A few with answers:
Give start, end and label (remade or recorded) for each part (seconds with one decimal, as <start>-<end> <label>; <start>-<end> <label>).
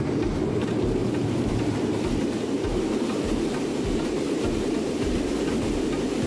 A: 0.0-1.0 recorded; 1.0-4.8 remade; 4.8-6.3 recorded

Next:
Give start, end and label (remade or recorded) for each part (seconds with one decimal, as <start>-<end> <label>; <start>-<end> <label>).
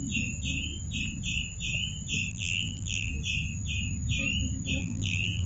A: 0.0-2.3 recorded; 2.3-3.1 remade; 3.1-4.8 recorded; 4.8-5.5 remade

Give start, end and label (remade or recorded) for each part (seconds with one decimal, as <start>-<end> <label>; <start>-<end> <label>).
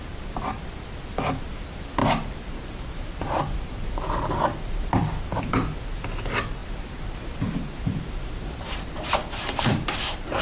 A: 0.0-2.0 recorded; 2.0-5.4 remade; 5.4-6.6 recorded; 6.6-10.4 remade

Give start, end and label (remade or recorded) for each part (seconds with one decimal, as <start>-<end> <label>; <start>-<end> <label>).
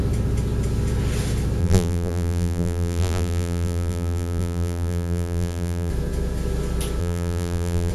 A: 0.0-1.6 recorded; 1.6-5.9 remade; 5.9-7.0 recorded; 7.0-7.9 remade